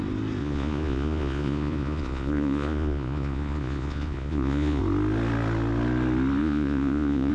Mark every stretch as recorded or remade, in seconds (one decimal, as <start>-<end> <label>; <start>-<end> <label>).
0.0-0.4 recorded; 0.4-4.8 remade; 4.8-6.4 recorded; 6.4-7.3 remade